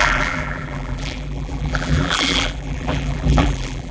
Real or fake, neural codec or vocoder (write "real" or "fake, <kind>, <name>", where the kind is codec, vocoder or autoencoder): fake, vocoder, BigVGAN v2